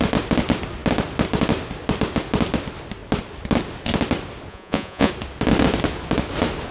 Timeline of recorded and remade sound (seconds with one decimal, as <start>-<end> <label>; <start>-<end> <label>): 0.0-4.5 recorded; 4.5-5.1 remade; 5.1-6.7 recorded